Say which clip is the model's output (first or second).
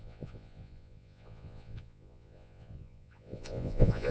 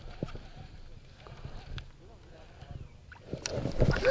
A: first